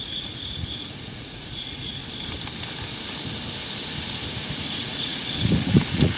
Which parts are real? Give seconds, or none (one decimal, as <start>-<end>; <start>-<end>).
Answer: 2.0-4.5